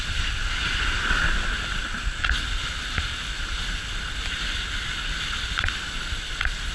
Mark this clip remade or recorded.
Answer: recorded